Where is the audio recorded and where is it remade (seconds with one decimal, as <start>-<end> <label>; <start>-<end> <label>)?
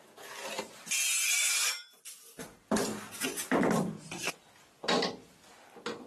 0.0-6.1 recorded